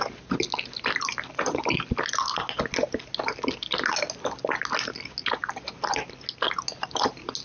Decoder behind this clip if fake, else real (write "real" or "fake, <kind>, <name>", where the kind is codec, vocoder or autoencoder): real